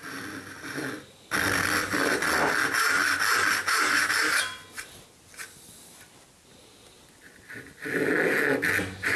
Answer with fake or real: real